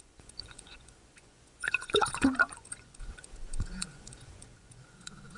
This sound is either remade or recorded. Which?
remade